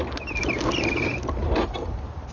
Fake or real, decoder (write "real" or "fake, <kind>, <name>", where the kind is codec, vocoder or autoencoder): real